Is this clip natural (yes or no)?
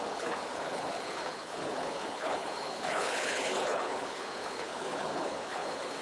no